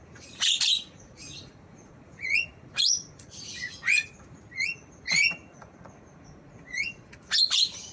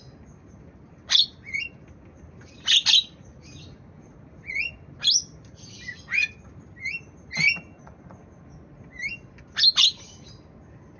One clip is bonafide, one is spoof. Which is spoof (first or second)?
first